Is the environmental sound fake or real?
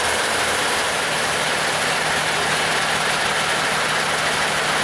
real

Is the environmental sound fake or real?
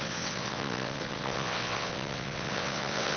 fake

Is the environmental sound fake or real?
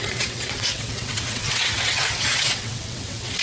fake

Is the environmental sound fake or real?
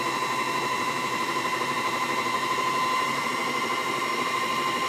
real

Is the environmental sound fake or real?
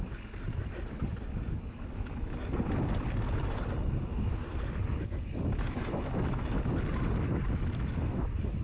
real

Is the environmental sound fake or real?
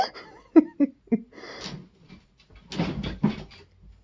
real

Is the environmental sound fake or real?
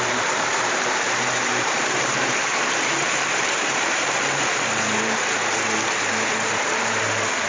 fake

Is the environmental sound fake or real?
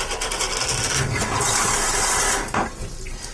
real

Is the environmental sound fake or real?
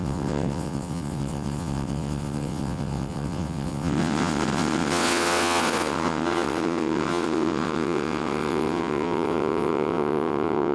fake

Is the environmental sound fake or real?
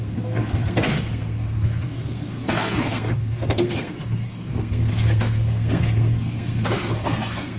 fake